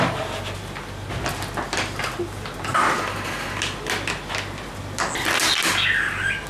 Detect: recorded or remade recorded